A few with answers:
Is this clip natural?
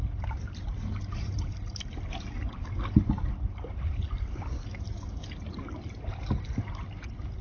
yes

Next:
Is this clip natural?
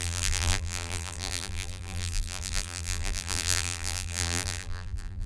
no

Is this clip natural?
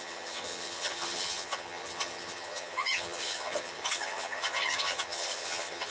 no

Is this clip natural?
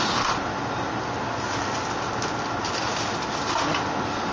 yes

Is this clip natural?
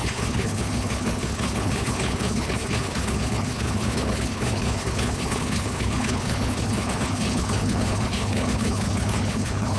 no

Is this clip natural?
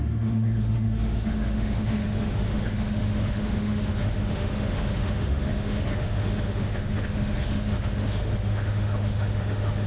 no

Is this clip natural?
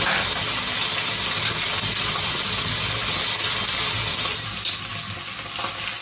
yes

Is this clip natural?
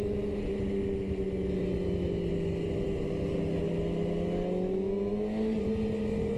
yes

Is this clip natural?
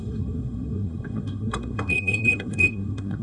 no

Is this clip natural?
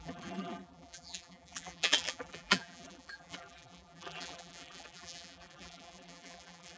no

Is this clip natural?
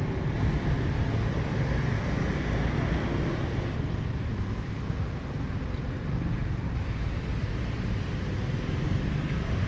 yes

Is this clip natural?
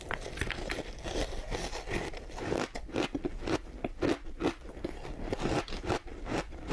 yes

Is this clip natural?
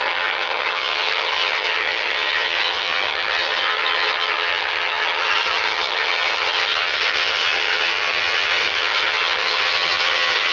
no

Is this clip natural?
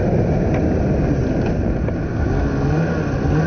yes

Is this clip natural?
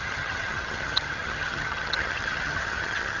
no